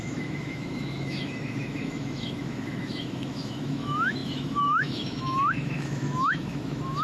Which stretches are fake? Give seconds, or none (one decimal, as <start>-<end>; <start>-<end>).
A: 0.0-7.0